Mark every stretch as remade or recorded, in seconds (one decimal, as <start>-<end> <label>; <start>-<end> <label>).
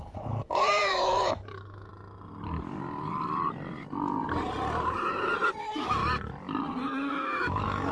0.0-1.9 remade; 1.9-5.6 recorded; 5.6-6.0 remade; 6.0-7.1 recorded; 7.1-7.9 remade